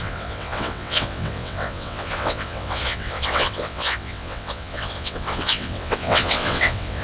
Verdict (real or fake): fake